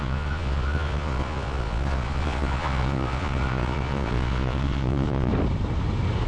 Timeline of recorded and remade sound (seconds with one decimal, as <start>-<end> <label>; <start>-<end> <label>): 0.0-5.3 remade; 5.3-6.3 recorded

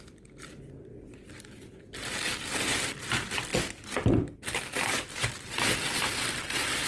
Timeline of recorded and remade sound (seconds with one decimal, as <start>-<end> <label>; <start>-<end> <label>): 0.0-6.9 recorded

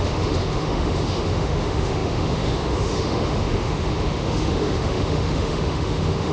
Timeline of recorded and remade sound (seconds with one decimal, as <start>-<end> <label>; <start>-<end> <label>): 0.0-6.3 remade

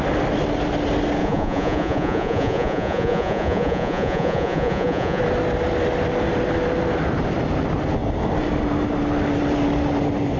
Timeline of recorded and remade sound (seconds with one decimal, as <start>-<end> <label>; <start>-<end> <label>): 0.0-1.2 recorded; 1.2-5.2 remade; 5.2-10.4 recorded

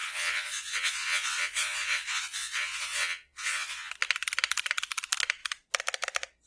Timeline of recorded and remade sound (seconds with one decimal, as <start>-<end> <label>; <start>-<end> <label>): 0.0-3.9 remade; 3.9-6.5 recorded

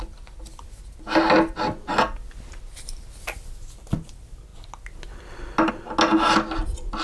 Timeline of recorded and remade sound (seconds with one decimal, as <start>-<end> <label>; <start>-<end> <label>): 0.0-7.0 recorded

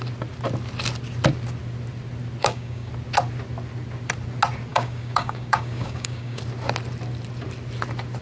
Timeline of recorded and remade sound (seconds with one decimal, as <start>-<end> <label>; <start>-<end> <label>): 0.0-2.4 recorded; 2.4-2.9 remade; 2.9-4.7 recorded; 4.7-6.4 remade; 6.4-8.2 recorded

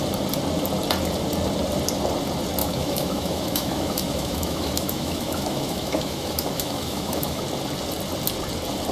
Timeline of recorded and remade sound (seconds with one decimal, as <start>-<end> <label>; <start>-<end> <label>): 0.0-2.6 recorded; 2.6-7.4 remade; 7.4-8.9 recorded